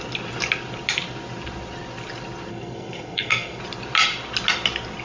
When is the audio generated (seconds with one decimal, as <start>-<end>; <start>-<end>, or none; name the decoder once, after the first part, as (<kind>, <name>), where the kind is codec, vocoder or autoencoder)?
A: 2.5-3.6 (codec, SNAC)